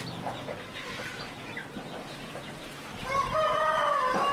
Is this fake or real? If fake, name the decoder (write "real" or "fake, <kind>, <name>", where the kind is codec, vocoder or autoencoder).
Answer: real